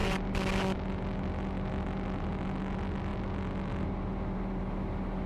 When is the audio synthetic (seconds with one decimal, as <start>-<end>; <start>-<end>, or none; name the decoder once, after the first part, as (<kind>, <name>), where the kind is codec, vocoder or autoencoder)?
none